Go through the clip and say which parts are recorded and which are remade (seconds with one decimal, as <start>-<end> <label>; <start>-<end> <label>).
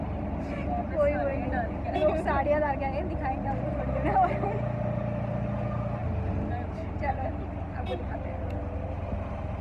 0.0-9.6 recorded